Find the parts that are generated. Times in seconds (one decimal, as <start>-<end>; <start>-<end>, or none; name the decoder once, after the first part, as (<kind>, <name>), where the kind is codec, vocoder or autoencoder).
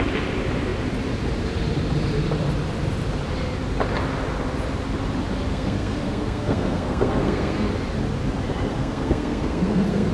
5.5-7.7 (codec, SNAC); 8.7-10.1